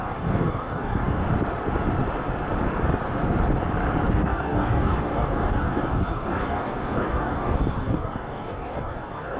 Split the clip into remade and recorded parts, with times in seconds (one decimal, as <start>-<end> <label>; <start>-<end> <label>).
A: 0.0-1.2 remade; 1.2-4.1 recorded; 4.1-9.4 remade